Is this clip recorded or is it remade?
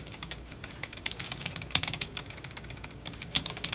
remade